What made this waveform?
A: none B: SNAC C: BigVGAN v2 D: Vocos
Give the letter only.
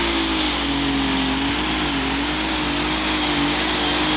A